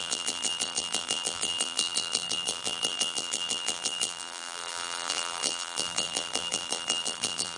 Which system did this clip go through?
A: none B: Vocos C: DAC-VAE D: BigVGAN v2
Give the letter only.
D